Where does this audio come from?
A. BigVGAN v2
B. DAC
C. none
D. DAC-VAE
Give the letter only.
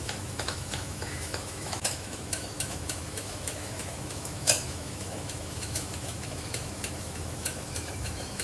D